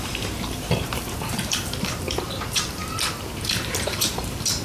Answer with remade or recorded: remade